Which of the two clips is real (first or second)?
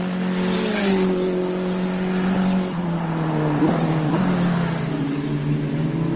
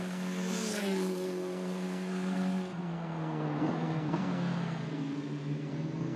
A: first